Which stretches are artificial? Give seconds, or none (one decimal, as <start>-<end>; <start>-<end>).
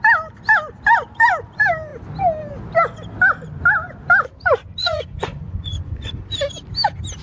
4.8-6.2